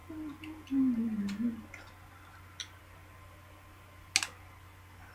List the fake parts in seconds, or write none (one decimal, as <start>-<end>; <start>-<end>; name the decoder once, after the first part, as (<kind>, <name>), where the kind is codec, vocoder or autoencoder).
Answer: none